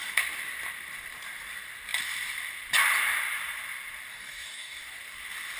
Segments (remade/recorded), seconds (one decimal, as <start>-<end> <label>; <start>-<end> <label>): 0.0-4.1 recorded; 4.1-4.8 remade; 4.8-5.6 recorded